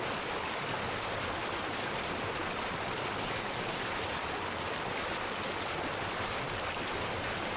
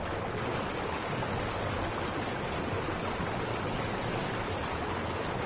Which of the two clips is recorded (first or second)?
second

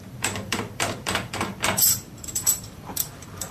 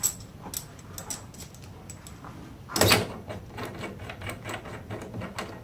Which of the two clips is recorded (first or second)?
second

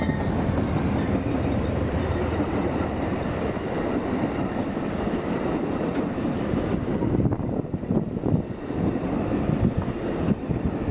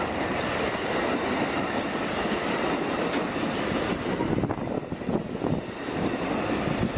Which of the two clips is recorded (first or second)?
second